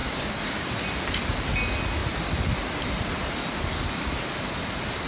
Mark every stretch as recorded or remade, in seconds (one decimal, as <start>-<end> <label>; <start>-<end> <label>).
0.0-0.7 remade; 0.7-5.1 recorded